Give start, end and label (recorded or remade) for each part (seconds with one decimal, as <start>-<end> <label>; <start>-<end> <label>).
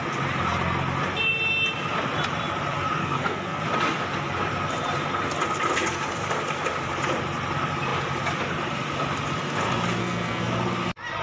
0.0-3.0 recorded; 3.0-3.6 remade; 3.6-10.0 recorded; 10.0-10.5 remade; 10.5-11.2 recorded